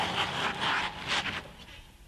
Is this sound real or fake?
real